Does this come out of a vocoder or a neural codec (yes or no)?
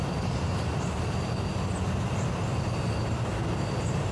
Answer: no